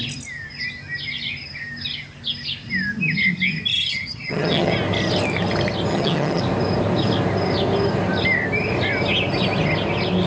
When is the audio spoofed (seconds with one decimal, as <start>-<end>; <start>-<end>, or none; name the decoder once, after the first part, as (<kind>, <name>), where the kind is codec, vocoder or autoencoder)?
3.7-4.7 (vocoder, HiFi-GAN); 5.9-6.4